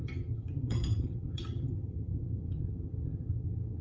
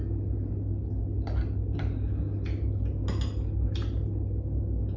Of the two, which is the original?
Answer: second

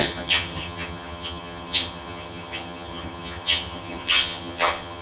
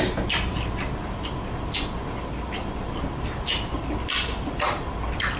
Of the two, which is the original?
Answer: second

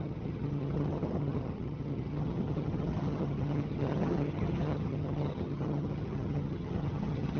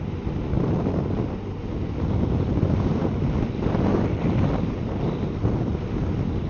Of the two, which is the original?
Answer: second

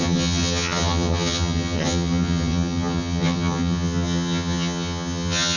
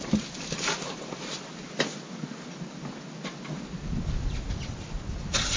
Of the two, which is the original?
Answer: second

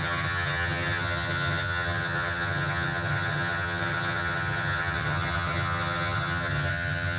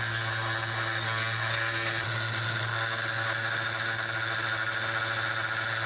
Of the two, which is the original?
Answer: second